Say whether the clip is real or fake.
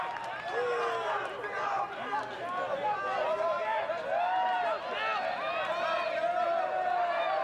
real